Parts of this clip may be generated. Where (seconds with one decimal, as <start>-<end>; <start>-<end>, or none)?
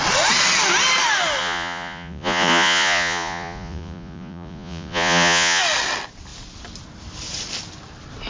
1.4-5.6